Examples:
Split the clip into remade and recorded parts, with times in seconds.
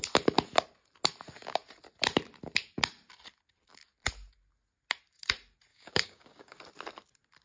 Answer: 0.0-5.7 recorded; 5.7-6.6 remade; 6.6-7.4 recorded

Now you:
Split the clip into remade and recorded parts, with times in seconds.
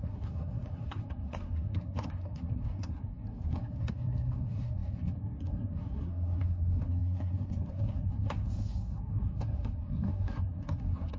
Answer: 0.0-11.2 remade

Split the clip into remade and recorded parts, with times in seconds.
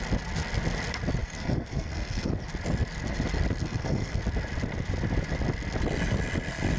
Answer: 0.0-1.2 recorded; 1.2-2.3 remade; 2.3-3.6 recorded; 3.6-4.2 remade; 4.2-6.8 recorded